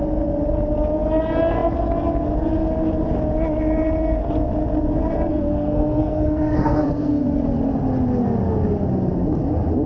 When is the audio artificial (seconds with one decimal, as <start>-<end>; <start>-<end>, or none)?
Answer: 5.3-7.2